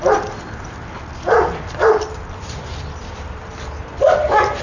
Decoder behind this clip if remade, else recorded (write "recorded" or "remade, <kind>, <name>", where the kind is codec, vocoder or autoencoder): remade, vocoder, BigVGAN v2